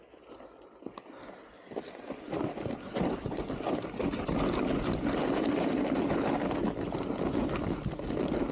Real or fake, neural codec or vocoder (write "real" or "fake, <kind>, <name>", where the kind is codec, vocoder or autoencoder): real